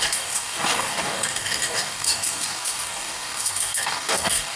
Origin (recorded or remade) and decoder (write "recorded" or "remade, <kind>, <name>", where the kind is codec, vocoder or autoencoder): remade, codec, DAC